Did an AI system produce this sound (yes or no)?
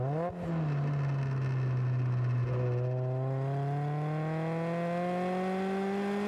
no